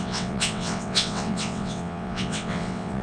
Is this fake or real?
fake